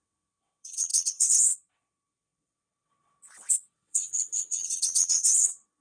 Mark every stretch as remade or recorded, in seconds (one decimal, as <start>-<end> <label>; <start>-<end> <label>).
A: 0.0-5.8 remade

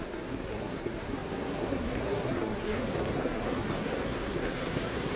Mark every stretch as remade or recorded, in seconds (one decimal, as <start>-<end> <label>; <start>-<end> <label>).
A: 0.0-5.2 remade

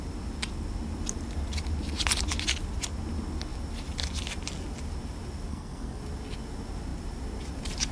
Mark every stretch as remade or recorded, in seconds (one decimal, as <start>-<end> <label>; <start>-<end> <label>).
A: 0.0-5.5 recorded; 5.5-6.0 remade; 6.0-7.9 recorded

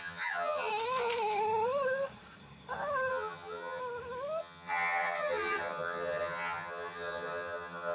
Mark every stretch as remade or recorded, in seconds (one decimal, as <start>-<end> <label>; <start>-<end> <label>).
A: 0.0-0.7 remade; 0.7-3.1 recorded; 3.1-3.8 remade; 3.8-4.4 recorded; 4.4-7.9 remade

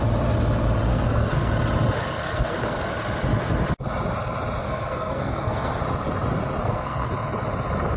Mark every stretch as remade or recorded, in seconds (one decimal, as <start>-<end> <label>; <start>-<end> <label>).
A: 0.0-0.9 recorded; 0.9-1.5 remade; 1.5-2.0 recorded; 2.0-2.8 remade; 2.8-4.6 recorded; 4.6-5.8 remade; 5.8-6.6 recorded; 6.6-7.1 remade; 7.1-8.0 recorded

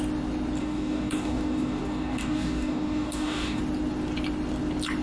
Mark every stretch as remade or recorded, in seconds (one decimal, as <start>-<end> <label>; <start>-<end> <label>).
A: 0.0-0.6 recorded; 0.6-3.6 remade; 3.6-5.0 recorded